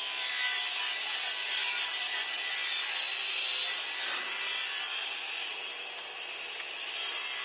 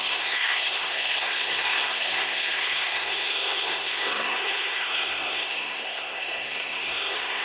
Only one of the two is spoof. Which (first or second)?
second